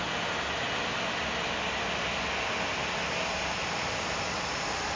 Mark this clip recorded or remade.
recorded